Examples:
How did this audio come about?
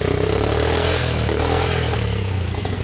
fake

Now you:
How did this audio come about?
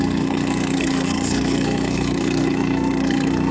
fake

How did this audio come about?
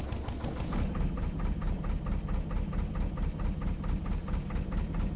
real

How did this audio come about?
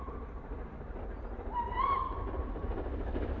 real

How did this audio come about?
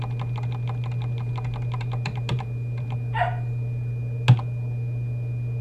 real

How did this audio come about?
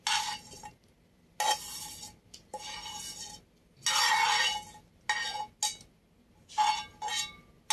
real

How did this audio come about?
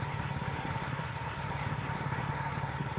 fake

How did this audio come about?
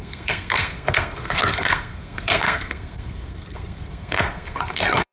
fake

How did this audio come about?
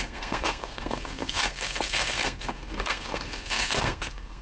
fake